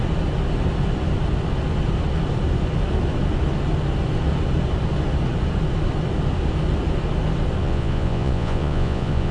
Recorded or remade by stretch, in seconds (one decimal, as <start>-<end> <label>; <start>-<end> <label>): 0.0-7.6 recorded; 7.6-9.3 remade

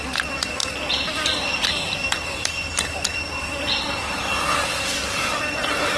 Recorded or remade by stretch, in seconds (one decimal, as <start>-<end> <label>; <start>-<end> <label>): 0.0-0.6 recorded; 0.6-4.2 remade; 4.2-6.0 recorded

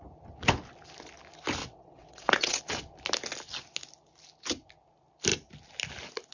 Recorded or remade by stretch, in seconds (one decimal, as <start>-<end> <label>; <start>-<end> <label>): 0.0-1.6 recorded; 1.6-2.6 remade; 2.6-6.3 recorded

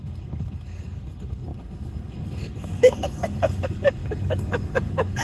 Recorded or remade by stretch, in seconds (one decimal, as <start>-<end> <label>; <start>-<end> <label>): 0.0-5.2 remade

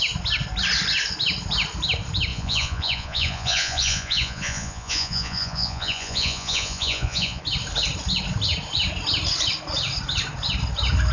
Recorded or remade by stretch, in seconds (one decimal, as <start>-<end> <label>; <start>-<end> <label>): 0.0-2.3 recorded; 2.3-7.4 remade; 7.4-11.1 recorded